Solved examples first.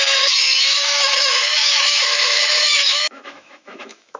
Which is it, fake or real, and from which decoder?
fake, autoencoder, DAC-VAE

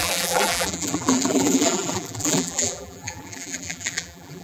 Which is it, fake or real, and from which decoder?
fake, vocoder, BigVGAN v2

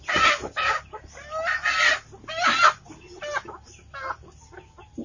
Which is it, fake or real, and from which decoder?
real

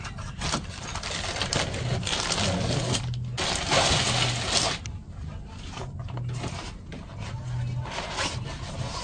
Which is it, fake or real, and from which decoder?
real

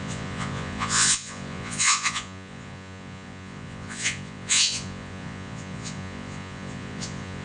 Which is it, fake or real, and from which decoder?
fake, vocoder, Vocos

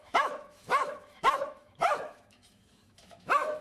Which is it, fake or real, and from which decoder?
fake, autoencoder, DAC-VAE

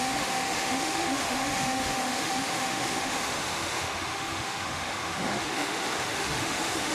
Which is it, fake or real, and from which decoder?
fake, autoencoder, DAC-VAE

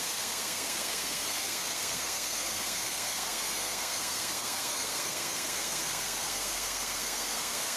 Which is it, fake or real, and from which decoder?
fake, codec, SNAC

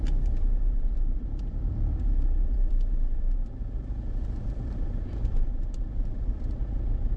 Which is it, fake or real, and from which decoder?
fake, vocoder, BigVGAN v2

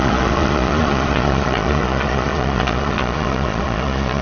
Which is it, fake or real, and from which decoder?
fake, vocoder, Vocos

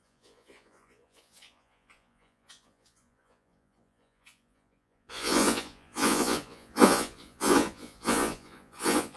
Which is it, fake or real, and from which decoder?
fake, vocoder, Vocos